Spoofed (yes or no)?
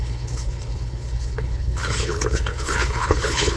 yes